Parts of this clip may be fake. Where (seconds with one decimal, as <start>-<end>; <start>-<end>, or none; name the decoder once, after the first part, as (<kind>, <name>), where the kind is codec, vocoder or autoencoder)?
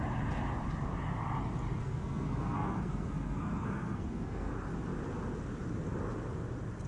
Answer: 1.8-4.5 (codec, SNAC)